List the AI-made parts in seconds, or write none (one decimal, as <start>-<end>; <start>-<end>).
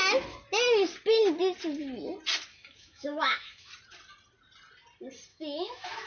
2.5-3.7; 5.3-6.1